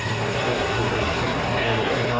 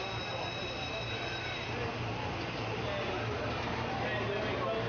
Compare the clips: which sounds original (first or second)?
second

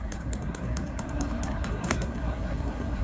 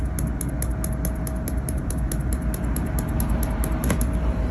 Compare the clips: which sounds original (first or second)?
second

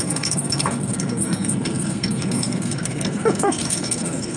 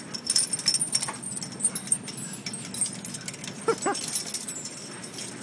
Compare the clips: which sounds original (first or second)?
second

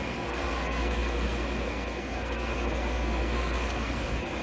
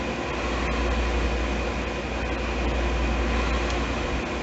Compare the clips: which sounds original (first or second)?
second